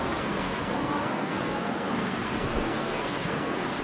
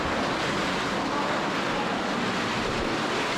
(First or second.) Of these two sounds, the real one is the second